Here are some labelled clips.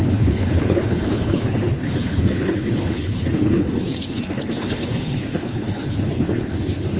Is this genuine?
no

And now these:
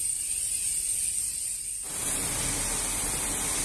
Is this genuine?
yes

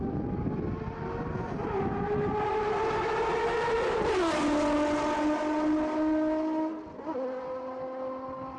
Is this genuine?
yes